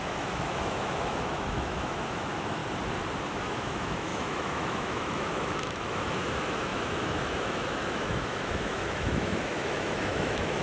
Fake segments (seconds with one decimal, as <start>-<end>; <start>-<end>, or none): 0.0-2.6; 3.3-10.6